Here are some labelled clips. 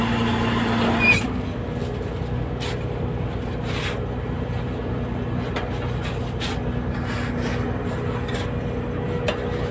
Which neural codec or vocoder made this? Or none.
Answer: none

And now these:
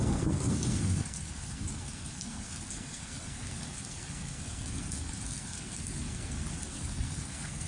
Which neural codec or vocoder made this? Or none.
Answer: codec, SNAC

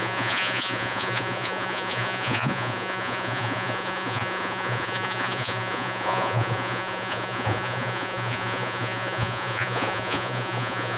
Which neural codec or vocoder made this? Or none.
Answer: vocoder, Vocos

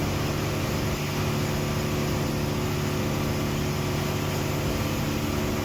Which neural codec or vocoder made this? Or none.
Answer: none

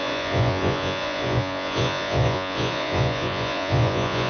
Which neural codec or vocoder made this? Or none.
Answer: vocoder, Vocos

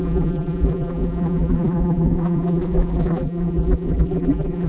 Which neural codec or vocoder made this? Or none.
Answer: vocoder, BigVGAN v2